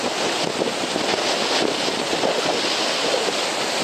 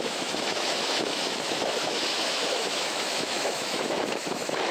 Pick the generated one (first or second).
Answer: second